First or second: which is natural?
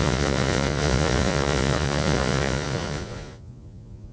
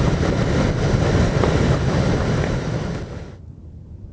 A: second